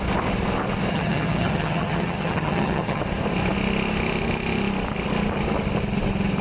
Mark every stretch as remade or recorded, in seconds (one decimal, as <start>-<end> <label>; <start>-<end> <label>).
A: 0.0-0.9 recorded; 0.9-3.0 remade; 3.0-6.4 recorded